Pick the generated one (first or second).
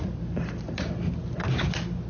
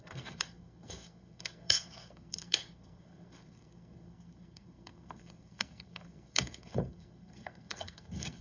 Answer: second